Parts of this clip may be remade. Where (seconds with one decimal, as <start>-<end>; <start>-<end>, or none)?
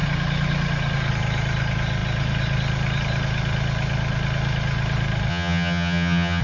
5.3-6.4